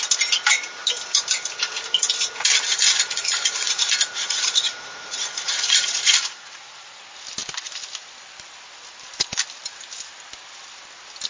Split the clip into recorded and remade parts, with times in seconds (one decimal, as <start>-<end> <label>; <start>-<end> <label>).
0.0-2.7 recorded; 2.7-7.0 remade; 7.0-11.3 recorded